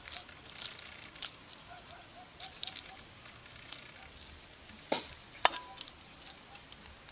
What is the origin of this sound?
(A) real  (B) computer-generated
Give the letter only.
A